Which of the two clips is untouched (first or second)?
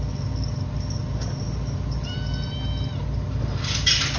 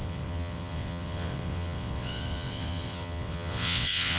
first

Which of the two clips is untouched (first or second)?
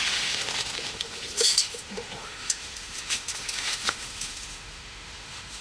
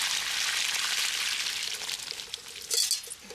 second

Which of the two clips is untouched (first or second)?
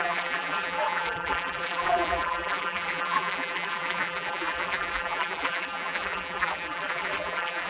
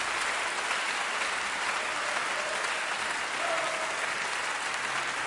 second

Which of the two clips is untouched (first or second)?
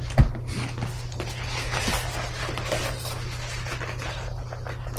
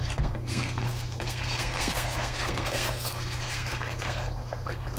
first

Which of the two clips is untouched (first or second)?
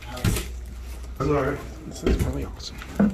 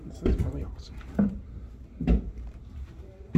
first